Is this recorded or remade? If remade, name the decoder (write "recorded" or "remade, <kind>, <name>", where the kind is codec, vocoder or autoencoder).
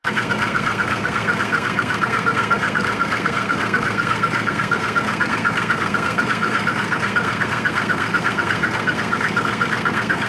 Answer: remade, codec, SNAC